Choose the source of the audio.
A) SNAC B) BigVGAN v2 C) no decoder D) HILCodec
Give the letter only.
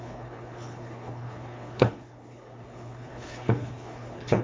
D